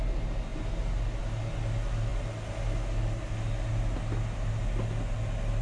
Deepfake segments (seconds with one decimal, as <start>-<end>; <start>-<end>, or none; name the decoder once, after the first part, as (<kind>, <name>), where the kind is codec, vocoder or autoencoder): none